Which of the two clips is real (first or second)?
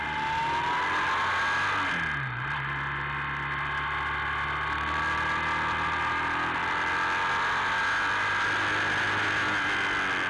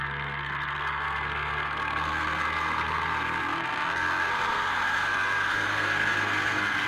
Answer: first